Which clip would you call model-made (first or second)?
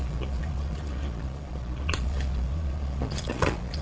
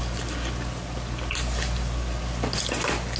first